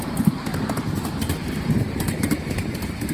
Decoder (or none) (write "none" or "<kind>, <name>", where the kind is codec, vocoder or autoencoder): vocoder, BigVGAN v2